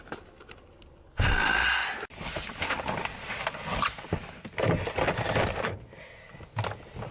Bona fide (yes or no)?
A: yes